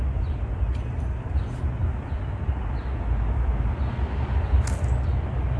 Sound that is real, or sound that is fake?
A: real